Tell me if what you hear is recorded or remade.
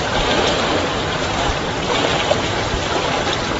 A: recorded